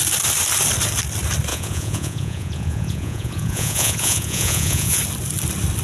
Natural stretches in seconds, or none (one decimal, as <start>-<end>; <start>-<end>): 0.0-1.5; 5.0-5.8